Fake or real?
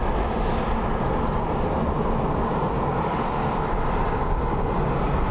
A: real